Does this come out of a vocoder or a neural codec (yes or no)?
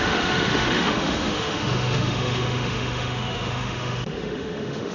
yes